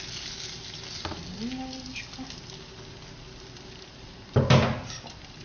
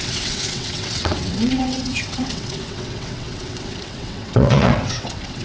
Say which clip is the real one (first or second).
first